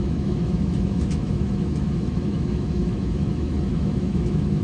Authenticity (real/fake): fake